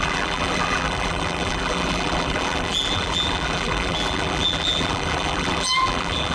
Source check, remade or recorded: remade